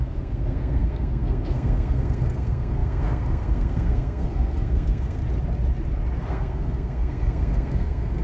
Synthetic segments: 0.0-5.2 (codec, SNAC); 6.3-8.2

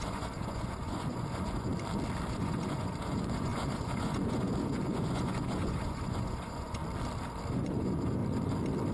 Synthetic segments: 0.0-1.7 (vocoder, Vocos); 2.2-6.8; 7.5-8.2

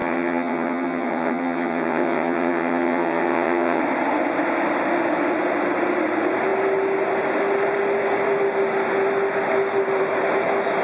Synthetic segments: 0.0-3.8 (vocoder, HiFi-GAN)

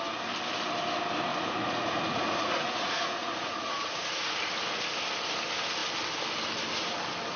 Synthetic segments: 1.3-4.3 (vocoder, Vocos)

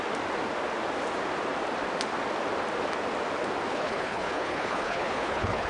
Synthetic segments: 3.7-5.7 (codec, HILCodec)

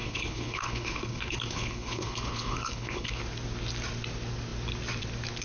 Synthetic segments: 0.0-3.2 (codec, HILCodec)

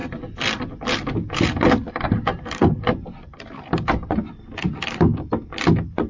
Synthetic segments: none